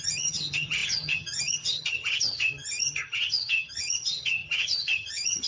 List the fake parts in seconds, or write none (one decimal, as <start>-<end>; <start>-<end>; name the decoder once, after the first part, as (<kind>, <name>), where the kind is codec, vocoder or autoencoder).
0.0-5.5 (vocoder, HiFi-GAN)